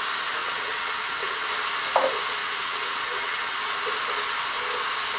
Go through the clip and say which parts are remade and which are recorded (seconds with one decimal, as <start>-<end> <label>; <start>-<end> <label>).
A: 0.0-0.4 recorded; 0.4-1.5 remade; 1.5-2.4 recorded; 2.4-3.6 remade; 3.6-5.2 recorded